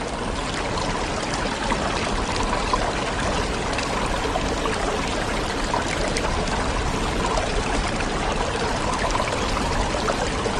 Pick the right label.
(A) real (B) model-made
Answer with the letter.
A